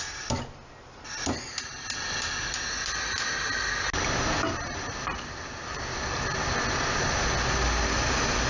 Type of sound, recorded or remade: recorded